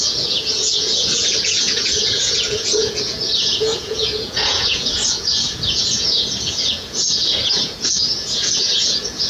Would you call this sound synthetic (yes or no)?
yes